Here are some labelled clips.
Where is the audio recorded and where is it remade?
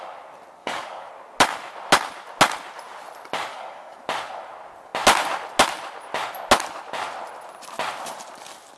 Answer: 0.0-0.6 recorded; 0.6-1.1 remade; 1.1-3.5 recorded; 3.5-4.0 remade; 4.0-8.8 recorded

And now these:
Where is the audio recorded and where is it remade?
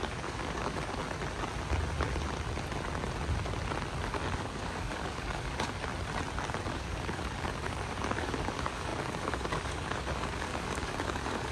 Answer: 0.0-1.0 remade; 1.0-4.0 recorded; 4.0-5.9 remade; 5.9-6.7 recorded; 6.7-11.5 remade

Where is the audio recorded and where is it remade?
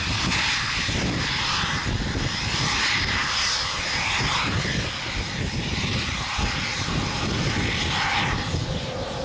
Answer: 0.0-9.2 recorded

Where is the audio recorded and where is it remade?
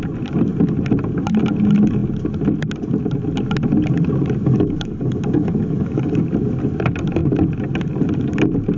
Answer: 0.0-4.4 recorded; 4.4-6.2 remade; 6.2-8.8 recorded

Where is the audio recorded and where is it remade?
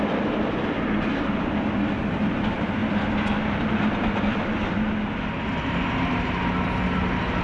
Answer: 0.0-7.4 recorded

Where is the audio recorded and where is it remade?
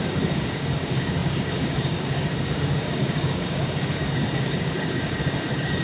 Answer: 0.0-5.8 remade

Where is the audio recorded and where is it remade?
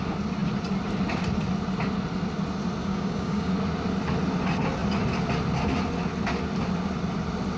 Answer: 0.0-2.8 recorded; 2.8-3.5 remade; 3.5-7.6 recorded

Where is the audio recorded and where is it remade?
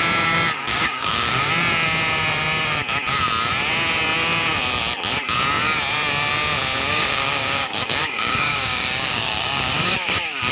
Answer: 0.0-0.7 recorded; 0.7-1.5 remade; 1.5-6.9 recorded; 6.9-10.5 remade